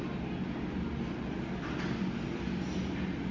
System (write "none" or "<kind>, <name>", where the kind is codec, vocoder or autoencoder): vocoder, BigVGAN v2